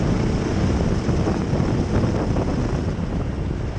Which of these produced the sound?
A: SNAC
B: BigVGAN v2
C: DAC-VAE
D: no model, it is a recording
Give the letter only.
D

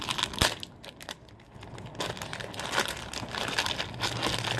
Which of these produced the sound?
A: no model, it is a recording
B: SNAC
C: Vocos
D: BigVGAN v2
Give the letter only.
A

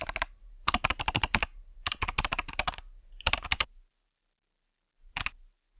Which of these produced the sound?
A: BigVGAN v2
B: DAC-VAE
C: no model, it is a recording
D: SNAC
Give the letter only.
C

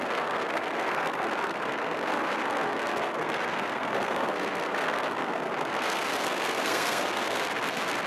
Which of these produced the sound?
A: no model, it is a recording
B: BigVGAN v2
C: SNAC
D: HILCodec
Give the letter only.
C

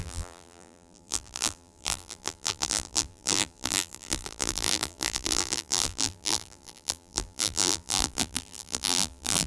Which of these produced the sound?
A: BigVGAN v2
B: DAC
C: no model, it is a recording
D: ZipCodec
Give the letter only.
A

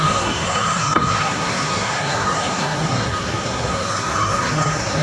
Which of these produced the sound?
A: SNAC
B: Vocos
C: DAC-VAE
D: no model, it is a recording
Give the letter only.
A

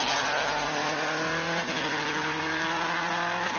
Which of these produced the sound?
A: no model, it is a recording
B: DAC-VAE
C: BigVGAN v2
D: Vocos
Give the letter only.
A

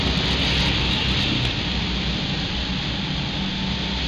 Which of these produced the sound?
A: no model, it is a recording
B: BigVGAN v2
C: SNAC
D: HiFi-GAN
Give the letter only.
A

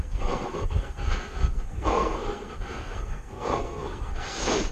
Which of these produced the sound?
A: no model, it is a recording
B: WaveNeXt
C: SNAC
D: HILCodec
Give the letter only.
C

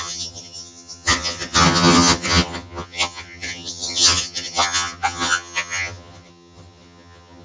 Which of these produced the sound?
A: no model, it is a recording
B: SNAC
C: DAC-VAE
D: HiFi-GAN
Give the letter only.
D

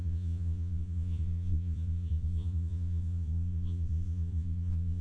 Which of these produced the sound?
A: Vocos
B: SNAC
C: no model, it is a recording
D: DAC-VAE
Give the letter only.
A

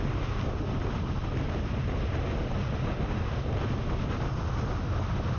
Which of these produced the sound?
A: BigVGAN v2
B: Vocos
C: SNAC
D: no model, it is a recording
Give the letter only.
D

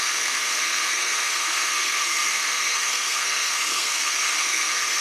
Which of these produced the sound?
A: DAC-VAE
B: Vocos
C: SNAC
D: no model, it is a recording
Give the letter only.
C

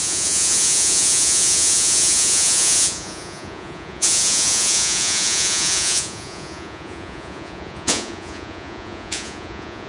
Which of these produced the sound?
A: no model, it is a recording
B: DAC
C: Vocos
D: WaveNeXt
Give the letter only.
C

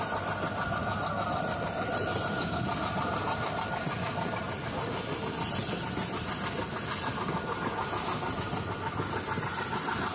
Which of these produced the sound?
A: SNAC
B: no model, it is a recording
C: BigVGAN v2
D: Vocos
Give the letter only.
B